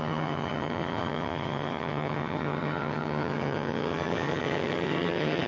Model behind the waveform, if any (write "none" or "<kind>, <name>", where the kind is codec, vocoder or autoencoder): vocoder, HiFi-GAN